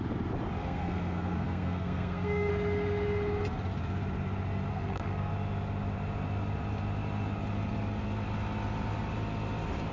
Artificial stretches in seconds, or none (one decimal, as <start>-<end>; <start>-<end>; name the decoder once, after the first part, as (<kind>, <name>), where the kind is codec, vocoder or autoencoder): 0.6-2.5 (codec, SNAC); 4.7-5.3